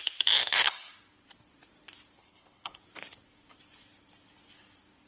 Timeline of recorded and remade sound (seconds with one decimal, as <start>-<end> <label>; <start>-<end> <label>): 0.0-0.4 recorded; 0.4-0.9 remade; 0.9-2.2 recorded; 2.2-2.8 remade; 2.8-5.1 recorded